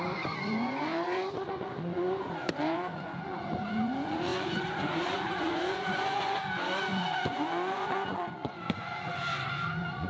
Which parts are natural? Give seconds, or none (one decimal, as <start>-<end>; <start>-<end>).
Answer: none